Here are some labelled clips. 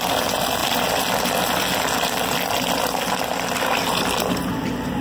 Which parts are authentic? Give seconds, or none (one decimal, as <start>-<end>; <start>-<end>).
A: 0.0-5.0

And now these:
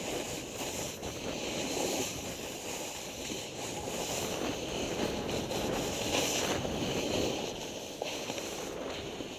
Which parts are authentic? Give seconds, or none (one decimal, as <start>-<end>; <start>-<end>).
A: 0.0-1.0; 3.4-9.4

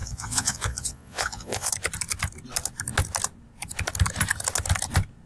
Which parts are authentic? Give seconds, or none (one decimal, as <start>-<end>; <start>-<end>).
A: 1.7-5.3

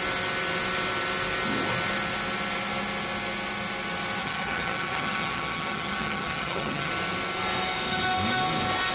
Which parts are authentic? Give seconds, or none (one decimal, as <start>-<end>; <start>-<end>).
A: 0.0-4.2; 6.9-8.9

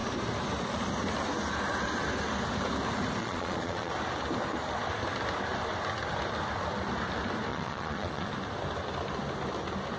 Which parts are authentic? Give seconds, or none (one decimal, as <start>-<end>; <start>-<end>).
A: 0.0-3.2; 3.9-7.5; 8.3-10.0

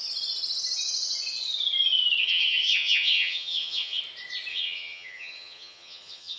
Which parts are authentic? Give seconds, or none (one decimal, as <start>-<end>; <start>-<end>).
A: 0.0-2.2; 4.0-4.5

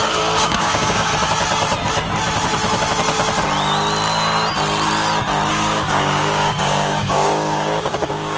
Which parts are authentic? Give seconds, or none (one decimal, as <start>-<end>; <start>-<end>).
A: 1.1-5.5